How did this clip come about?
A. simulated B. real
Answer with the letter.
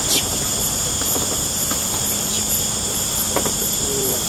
A